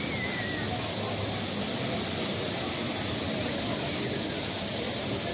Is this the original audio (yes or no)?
yes